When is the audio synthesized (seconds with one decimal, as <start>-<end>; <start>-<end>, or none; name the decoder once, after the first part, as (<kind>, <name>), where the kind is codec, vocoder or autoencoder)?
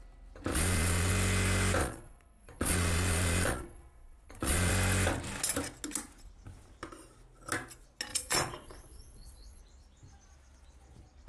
0.5-1.1 (vocoder, Vocos); 1.8-4.7; 8.1-9.6